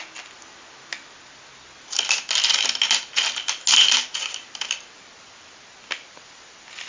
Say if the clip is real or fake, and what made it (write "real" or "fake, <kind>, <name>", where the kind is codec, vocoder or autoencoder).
real